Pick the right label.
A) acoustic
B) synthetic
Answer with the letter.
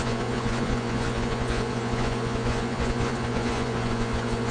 B